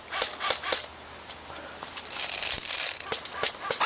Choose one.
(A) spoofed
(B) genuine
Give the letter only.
B